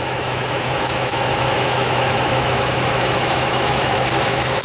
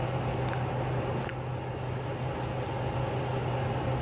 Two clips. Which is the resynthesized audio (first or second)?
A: first